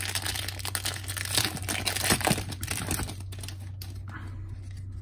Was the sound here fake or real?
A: real